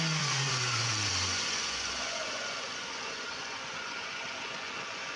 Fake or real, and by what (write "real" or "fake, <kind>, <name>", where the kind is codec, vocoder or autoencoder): fake, vocoder, Vocos